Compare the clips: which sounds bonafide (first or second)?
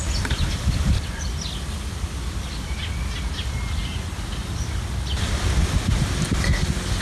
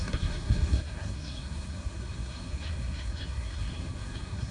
first